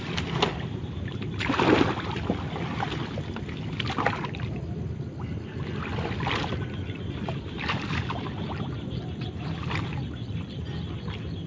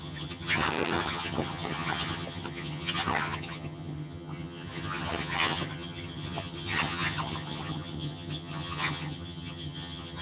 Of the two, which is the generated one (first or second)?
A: second